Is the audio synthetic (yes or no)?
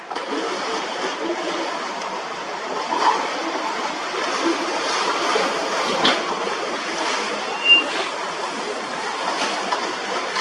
yes